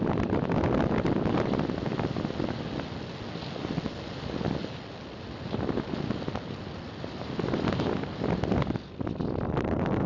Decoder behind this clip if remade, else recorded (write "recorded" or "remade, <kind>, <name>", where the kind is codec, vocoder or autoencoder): recorded